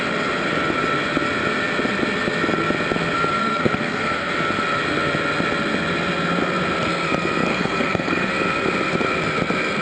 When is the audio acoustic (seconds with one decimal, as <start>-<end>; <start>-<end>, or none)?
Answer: 0.0-3.4; 4.3-7.5; 8.3-9.8